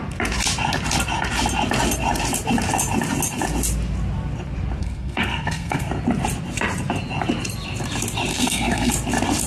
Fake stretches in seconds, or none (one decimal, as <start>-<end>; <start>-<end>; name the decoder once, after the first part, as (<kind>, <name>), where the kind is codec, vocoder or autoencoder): 4.8-5.9 (codec, SNAC); 8.3-8.9